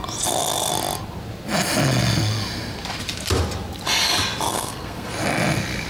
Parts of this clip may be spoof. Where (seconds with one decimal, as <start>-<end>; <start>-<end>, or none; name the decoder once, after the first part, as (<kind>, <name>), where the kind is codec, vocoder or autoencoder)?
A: 4.5-5.1 (codec, SNAC)